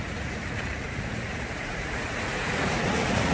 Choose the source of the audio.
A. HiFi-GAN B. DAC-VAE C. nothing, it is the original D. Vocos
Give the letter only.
D